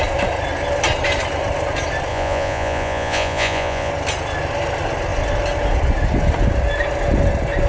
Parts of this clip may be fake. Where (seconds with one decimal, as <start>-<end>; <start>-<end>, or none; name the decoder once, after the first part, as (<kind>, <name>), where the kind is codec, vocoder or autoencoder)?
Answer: 2.1-3.9 (vocoder, Vocos)